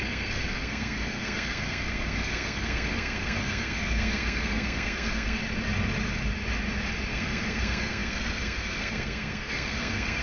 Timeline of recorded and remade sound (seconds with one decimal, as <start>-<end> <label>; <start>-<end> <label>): 0.0-5.4 remade; 5.4-7.1 recorded; 7.1-10.2 remade